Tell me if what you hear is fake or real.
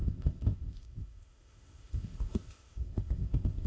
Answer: fake